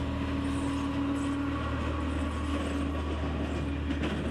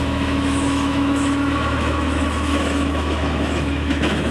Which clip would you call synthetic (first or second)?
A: second